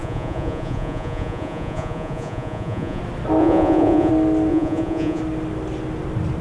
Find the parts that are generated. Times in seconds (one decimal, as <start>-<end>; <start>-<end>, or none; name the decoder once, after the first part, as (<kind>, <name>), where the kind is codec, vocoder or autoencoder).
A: 0.0-3.0 (vocoder, Vocos); 3.4-4.1; 4.5-5.2